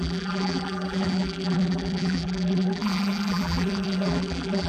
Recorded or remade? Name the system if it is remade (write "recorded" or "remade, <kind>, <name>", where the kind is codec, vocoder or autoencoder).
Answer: remade, vocoder, BigVGAN v2